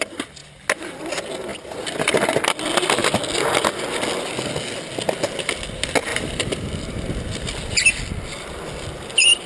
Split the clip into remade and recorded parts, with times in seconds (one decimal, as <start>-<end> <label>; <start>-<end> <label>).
0.0-6.1 recorded; 6.1-6.7 remade; 6.7-9.5 recorded